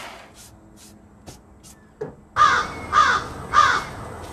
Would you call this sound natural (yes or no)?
yes